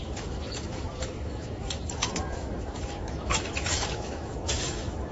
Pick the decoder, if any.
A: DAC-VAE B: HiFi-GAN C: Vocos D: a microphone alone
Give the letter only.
A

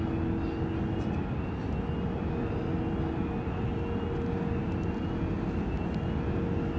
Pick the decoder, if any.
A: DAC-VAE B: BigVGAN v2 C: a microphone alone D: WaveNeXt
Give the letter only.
C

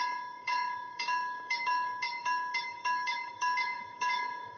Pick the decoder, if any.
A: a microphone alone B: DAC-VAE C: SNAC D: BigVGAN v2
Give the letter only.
B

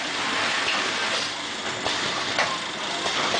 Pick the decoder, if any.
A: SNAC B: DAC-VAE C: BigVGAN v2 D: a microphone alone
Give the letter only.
D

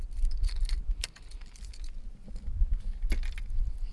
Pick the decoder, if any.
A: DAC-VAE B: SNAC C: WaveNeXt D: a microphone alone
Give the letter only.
D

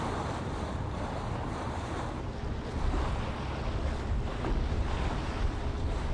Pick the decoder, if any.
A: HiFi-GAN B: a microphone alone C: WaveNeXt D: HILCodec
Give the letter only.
B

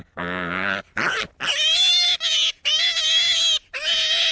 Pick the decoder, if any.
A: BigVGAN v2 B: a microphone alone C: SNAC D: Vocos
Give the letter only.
B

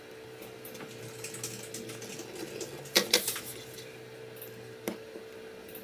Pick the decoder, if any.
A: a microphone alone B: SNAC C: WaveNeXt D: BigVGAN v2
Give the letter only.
A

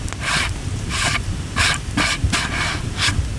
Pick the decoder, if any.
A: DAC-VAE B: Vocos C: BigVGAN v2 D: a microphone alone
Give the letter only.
C